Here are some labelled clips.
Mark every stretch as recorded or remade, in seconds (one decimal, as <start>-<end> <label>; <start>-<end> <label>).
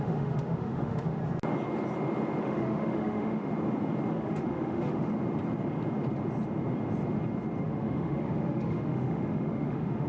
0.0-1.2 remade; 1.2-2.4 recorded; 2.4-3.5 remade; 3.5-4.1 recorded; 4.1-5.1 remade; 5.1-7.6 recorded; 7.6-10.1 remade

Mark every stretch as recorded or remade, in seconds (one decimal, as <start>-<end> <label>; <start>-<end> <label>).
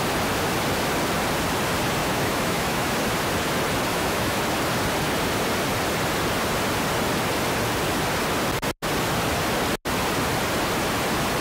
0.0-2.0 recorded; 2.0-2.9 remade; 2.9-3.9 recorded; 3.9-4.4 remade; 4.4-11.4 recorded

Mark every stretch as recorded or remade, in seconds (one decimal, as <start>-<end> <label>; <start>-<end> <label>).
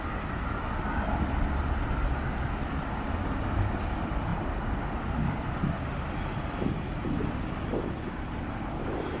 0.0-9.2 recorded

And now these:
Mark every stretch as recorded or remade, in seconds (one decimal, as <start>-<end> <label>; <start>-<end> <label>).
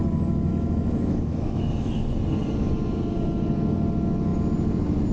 0.0-0.5 recorded; 0.5-2.0 remade; 2.0-5.1 recorded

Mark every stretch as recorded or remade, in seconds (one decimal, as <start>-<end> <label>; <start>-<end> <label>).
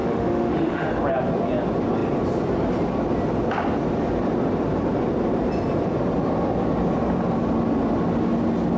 0.0-0.9 remade; 0.9-8.8 recorded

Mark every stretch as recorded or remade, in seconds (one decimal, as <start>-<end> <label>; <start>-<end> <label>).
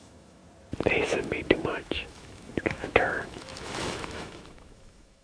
0.0-0.4 remade; 0.4-1.0 recorded; 1.0-5.2 remade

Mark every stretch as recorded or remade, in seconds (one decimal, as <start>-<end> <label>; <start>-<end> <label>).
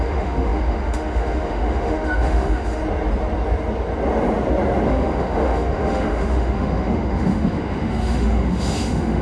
0.0-2.8 remade; 2.8-4.9 recorded; 4.9-9.2 remade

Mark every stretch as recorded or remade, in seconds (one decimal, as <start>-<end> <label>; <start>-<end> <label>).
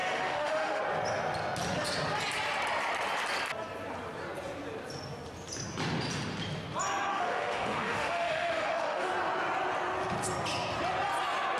0.0-0.8 remade; 0.8-7.1 recorded; 7.1-9.1 remade; 9.1-11.6 recorded